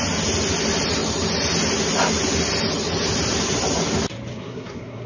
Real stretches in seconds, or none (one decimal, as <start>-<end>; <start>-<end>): 0.0-4.3